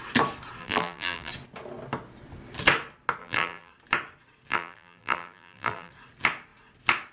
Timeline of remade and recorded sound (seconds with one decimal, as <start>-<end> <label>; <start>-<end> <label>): 0.0-0.6 recorded; 0.6-1.3 remade; 1.3-3.2 recorded; 3.2-3.7 remade; 3.7-4.5 recorded; 4.5-5.9 remade; 5.9-7.1 recorded